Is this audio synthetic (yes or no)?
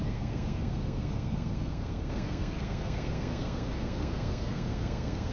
yes